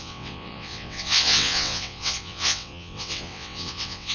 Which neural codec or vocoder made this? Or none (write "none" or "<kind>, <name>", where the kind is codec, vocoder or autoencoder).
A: vocoder, WaveNeXt